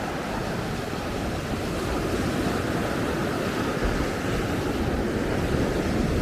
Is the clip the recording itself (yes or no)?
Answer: yes